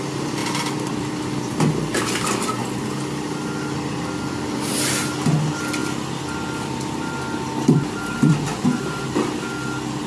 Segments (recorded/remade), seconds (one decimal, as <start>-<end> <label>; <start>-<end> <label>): 0.0-0.4 recorded; 0.4-1.2 remade; 1.2-5.8 recorded; 5.8-9.0 remade; 9.0-10.1 recorded